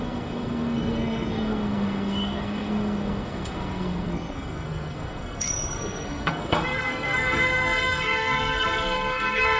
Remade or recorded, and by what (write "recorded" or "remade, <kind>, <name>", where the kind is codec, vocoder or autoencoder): remade, codec, SNAC